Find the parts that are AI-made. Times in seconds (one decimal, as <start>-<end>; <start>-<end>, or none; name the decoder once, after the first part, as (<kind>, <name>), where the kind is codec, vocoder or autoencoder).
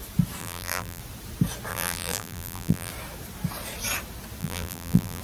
0.4-1.0 (vocoder, BigVGAN v2); 1.7-2.9; 4.4-5.2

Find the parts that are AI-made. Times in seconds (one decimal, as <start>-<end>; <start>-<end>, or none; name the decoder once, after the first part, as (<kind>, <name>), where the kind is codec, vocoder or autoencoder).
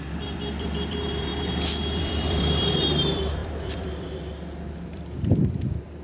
0.0-1.3 (vocoder, BigVGAN v2); 2.0-6.0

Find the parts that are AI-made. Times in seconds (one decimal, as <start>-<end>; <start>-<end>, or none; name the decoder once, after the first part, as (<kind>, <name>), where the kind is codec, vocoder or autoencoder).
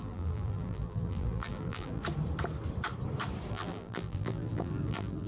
0.0-2.0 (vocoder, BigVGAN v2); 3.5-5.3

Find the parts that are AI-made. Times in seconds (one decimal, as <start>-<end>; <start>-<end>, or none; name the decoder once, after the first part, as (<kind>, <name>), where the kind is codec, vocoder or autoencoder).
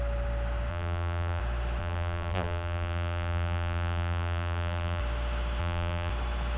0.7-1.4 (vocoder, BigVGAN v2); 1.8-5.0; 5.6-6.1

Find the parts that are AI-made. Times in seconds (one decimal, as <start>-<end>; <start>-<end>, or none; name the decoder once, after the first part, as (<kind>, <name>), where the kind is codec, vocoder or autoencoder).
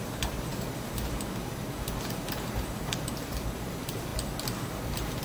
0.0-0.5 (vocoder, BigVGAN v2); 2.8-4.1; 4.6-5.2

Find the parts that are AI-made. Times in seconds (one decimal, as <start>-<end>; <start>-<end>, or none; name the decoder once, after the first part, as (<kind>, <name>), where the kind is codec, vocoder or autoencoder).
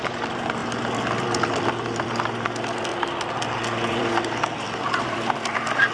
0.0-2.9 (vocoder, BigVGAN v2); 3.9-5.9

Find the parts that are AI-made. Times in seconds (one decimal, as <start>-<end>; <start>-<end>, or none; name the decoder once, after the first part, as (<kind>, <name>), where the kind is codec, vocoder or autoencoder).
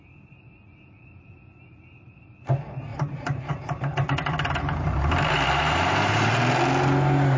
2.9-3.5 (vocoder, BigVGAN v2); 3.9-6.3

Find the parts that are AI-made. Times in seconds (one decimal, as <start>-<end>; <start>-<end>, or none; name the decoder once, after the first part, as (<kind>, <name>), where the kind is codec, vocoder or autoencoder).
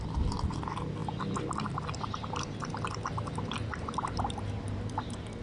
none